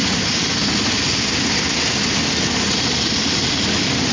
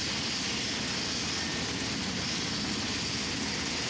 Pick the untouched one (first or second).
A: second